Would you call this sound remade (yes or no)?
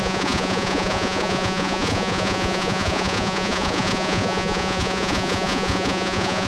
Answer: yes